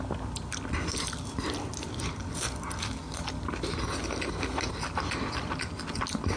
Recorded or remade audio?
recorded